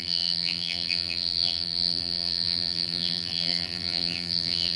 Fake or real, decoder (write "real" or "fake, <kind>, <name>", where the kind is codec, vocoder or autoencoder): fake, vocoder, BigVGAN v2